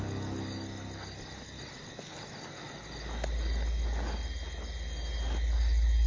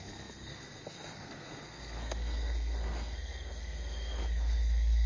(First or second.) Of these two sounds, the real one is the first